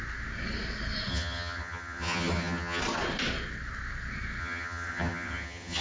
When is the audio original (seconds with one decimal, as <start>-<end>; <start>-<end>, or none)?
0.0-1.1; 2.8-4.4

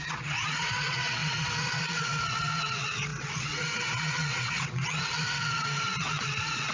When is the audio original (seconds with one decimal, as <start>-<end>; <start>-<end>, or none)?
none

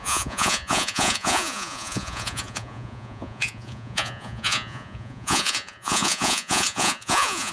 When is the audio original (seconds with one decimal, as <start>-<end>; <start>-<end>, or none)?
none

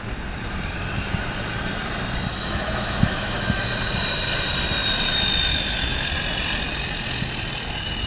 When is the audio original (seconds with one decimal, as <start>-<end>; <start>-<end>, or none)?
0.0-2.3; 3.6-5.5; 6.1-8.1

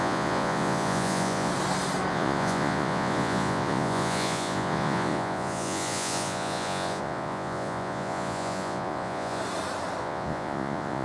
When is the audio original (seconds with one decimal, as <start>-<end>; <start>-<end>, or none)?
1.5-2.1; 9.4-10.0

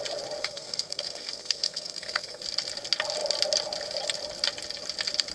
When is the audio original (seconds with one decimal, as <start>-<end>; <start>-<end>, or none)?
0.0-0.4; 2.4-5.3